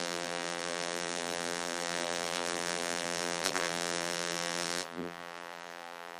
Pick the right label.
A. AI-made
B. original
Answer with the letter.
A